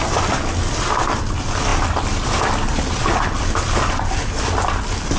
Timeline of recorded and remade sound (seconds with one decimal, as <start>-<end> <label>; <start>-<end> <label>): 0.0-5.2 recorded